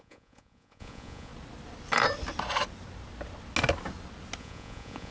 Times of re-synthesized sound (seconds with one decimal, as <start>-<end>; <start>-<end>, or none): 0.0-1.3; 4.4-5.1